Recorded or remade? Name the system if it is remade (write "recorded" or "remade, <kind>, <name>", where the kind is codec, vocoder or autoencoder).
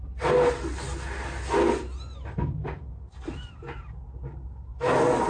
recorded